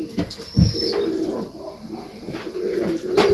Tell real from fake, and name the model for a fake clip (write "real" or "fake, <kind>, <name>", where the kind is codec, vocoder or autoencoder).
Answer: real